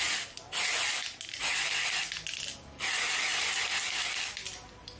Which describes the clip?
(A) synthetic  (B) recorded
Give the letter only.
B